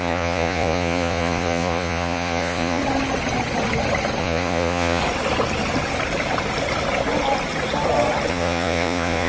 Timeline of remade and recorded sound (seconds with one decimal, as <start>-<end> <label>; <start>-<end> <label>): 0.0-2.8 remade; 2.8-4.2 recorded; 4.2-5.0 remade; 5.0-8.3 recorded; 8.3-9.3 remade